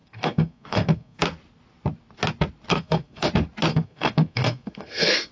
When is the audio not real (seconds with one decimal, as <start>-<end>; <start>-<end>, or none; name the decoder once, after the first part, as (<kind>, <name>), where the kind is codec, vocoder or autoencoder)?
0.0-1.2 (codec, SNAC); 2.7-3.3; 3.7-5.3